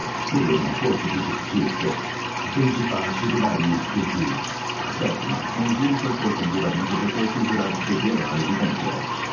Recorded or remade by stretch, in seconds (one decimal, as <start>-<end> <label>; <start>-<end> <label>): 0.0-9.3 recorded